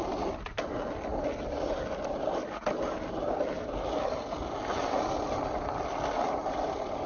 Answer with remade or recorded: recorded